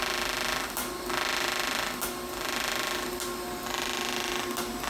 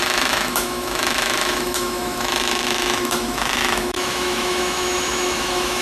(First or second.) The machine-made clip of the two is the second